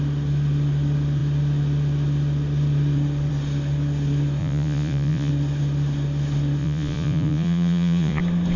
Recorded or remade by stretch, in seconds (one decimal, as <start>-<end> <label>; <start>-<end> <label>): 0.0-4.4 recorded; 4.4-5.3 remade; 5.3-6.6 recorded; 6.6-8.2 remade; 8.2-8.6 recorded